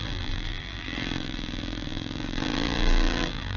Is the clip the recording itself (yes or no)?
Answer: no